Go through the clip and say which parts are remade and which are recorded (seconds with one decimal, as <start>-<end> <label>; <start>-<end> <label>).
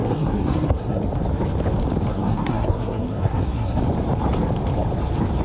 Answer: 0.0-1.0 remade; 1.0-2.1 recorded; 2.1-3.8 remade; 3.8-5.4 recorded